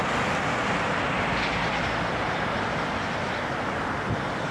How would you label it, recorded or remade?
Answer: recorded